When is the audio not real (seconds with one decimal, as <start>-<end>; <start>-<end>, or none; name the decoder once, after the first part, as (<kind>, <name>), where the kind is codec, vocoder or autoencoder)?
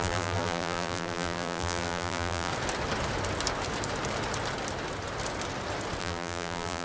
0.0-2.5 (vocoder, BigVGAN v2); 6.0-6.8